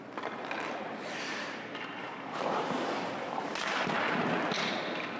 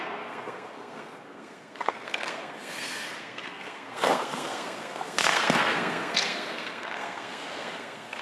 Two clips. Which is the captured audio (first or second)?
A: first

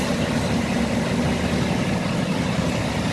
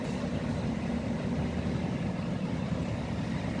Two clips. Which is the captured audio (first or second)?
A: first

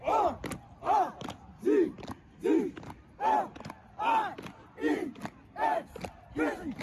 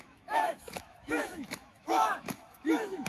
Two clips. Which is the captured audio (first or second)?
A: first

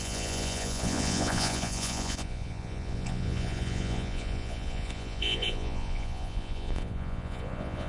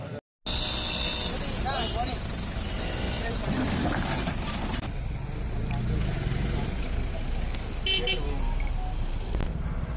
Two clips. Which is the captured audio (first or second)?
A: second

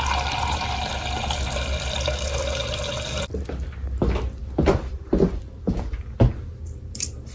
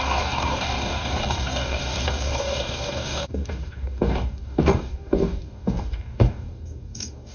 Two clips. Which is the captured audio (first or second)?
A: first